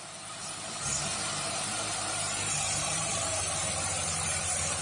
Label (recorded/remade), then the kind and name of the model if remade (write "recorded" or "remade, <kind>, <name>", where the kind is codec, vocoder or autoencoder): remade, vocoder, BigVGAN v2